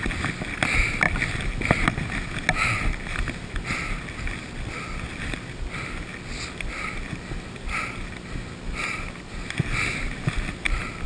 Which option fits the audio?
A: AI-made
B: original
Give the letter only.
B